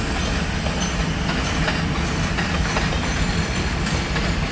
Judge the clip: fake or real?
real